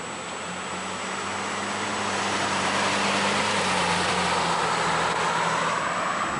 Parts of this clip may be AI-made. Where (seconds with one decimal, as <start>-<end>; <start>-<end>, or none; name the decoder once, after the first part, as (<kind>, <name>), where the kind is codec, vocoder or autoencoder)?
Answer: 1.9-4.1 (vocoder, BigVGAN v2)